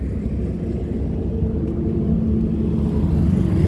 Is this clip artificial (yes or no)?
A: no